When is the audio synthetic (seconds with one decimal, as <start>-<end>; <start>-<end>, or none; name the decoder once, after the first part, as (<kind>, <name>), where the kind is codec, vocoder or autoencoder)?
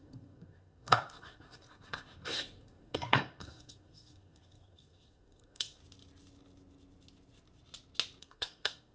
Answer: 0.0-5.8 (codec, SNAC); 8.2-8.9